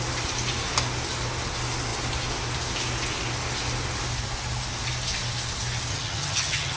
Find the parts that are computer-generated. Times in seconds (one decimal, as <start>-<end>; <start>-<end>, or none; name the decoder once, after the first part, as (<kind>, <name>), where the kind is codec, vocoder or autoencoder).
5.9-6.8 (vocoder, HiFi-GAN)